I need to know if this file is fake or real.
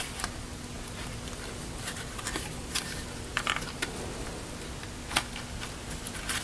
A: real